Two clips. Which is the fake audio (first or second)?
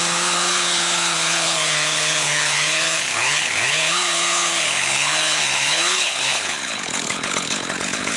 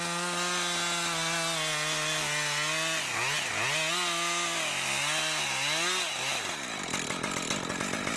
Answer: first